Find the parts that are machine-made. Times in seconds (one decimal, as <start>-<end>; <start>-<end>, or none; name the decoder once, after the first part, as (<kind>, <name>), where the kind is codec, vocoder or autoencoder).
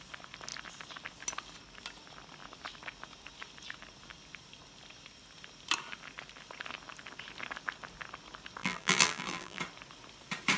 8.6-9.6 (vocoder, BigVGAN v2)